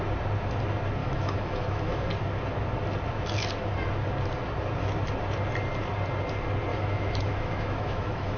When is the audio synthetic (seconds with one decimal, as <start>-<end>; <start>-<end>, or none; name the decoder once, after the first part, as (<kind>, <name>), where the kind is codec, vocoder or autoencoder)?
1.0-2.1 (autoencoder, DAC-VAE); 6.7-8.4